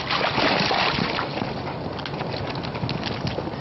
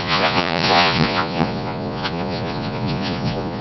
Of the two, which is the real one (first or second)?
first